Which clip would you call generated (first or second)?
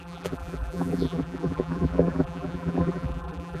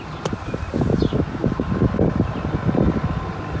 first